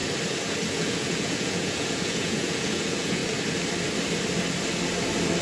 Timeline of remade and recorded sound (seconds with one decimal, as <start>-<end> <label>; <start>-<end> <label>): 0.0-0.7 recorded; 0.7-3.2 remade; 3.2-5.4 recorded